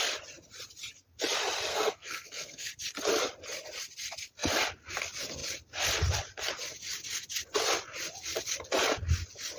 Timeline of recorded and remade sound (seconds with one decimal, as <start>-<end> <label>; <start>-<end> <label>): 0.0-1.7 recorded; 1.7-2.7 remade; 2.7-9.6 recorded